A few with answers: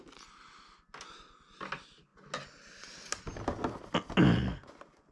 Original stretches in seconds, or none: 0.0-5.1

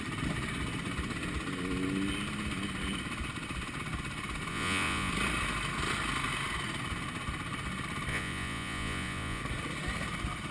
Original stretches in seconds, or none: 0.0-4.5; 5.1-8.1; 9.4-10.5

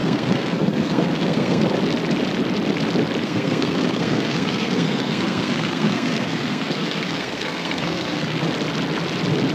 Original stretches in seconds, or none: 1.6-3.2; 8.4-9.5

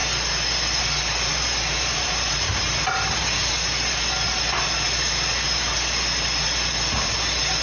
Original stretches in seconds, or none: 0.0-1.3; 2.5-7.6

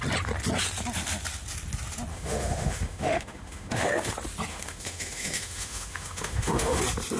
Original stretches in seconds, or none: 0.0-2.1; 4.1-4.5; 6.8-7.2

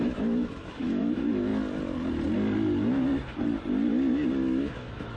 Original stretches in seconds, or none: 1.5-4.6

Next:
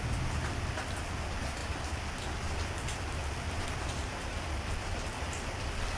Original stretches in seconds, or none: 0.0-6.0